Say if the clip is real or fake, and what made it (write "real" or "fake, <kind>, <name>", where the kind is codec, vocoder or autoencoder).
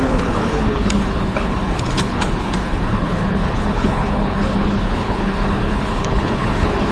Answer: fake, codec, HILCodec